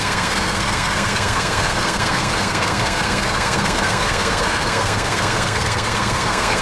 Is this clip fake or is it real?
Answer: fake